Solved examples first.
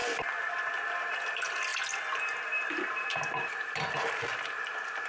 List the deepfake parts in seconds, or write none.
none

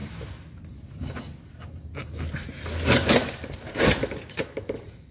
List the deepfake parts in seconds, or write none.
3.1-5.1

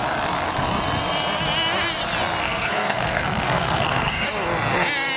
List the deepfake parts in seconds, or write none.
2.4-4.3